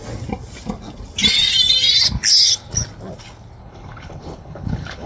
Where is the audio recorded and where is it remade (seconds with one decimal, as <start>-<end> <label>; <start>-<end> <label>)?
0.0-3.6 recorded; 3.6-5.1 remade